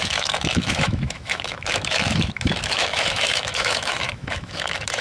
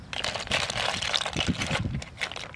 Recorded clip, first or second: second